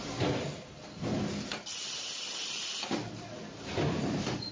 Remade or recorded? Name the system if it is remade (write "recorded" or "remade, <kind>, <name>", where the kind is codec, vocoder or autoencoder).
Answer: recorded